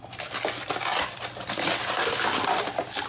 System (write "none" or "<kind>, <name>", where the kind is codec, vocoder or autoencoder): vocoder, BigVGAN v2